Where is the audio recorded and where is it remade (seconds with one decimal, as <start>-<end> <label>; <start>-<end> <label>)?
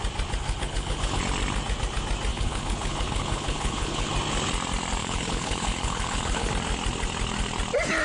0.0-0.4 recorded; 0.4-1.2 remade; 1.2-2.3 recorded; 2.3-4.1 remade; 4.1-5.0 recorded; 5.0-6.5 remade; 6.5-8.0 recorded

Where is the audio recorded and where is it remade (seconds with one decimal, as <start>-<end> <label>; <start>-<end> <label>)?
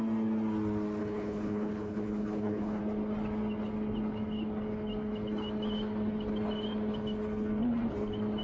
0.0-1.0 recorded; 1.0-2.8 remade; 2.8-8.4 recorded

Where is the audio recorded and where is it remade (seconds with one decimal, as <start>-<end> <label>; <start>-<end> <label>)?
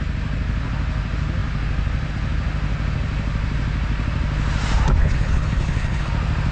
0.0-5.0 recorded; 5.0-6.1 remade; 6.1-6.5 recorded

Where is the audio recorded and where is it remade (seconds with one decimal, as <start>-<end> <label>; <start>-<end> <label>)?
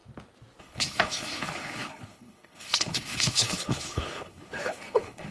0.0-0.6 recorded; 0.6-5.3 remade